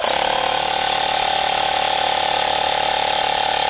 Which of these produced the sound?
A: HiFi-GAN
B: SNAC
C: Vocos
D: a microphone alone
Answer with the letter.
D